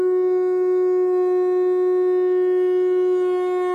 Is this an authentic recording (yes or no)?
yes